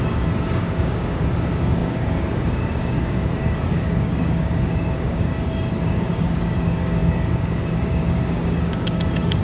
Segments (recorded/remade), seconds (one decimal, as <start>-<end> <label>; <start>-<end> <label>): 0.0-9.4 remade